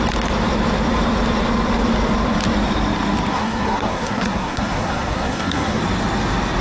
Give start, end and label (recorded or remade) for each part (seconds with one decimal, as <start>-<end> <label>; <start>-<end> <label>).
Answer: 0.0-3.3 recorded; 3.3-5.8 remade; 5.8-6.6 recorded